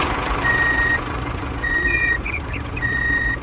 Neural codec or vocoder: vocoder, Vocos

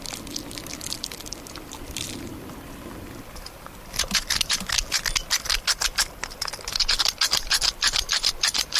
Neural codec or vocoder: none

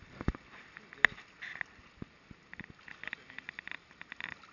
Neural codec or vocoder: none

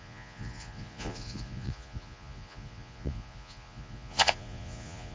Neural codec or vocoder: vocoder, Vocos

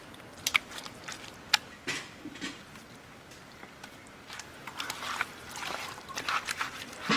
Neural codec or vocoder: none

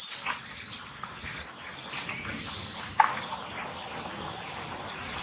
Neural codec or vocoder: none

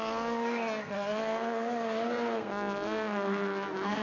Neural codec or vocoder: codec, SNAC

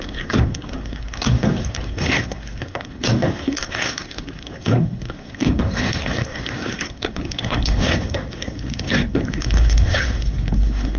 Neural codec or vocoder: codec, SNAC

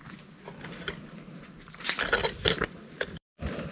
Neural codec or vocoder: none